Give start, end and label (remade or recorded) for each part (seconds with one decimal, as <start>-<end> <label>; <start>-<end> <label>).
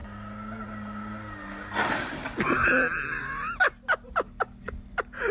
0.0-5.3 recorded